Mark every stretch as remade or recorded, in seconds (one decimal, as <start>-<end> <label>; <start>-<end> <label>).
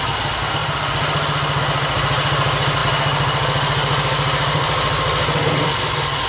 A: 0.0-6.3 recorded